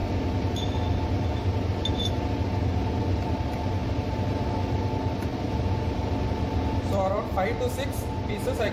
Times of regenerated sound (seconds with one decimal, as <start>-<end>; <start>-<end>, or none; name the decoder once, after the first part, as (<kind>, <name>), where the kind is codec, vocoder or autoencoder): none

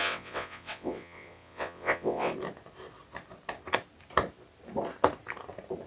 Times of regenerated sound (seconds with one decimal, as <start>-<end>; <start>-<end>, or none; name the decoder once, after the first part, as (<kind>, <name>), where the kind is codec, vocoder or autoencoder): 0.0-2.3 (vocoder, WaveNeXt)

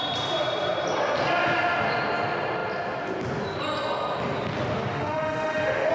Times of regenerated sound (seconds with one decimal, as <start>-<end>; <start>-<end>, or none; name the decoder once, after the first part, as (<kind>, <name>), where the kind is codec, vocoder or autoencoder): 4.9-5.9 (autoencoder, DAC-VAE)

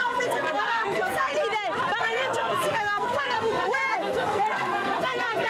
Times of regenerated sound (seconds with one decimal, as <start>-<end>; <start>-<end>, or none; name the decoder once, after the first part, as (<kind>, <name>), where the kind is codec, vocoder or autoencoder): 0.0-1.3 (codec, SNAC); 2.0-5.5

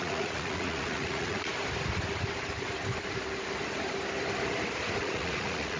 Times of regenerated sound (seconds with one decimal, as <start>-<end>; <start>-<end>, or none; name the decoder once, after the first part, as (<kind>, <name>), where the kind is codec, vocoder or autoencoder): 0.0-1.5 (vocoder, Vocos); 5.0-5.8

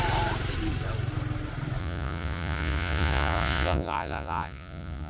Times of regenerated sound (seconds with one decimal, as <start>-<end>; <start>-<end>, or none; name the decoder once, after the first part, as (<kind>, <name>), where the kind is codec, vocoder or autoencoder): 1.8-5.1 (vocoder, Vocos)

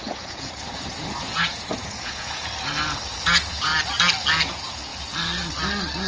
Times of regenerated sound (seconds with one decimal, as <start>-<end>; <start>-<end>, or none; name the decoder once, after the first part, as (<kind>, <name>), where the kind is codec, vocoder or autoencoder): 0.0-2.5 (vocoder, Vocos); 3.1-3.7; 4.5-4.9